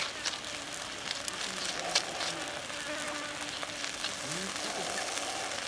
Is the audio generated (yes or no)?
no